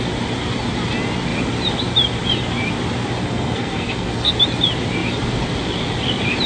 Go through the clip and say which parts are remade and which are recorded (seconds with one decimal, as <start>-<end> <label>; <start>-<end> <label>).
0.0-3.2 recorded; 3.2-4.3 remade; 4.3-6.5 recorded